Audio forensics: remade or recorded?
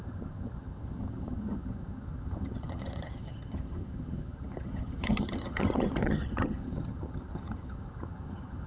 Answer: remade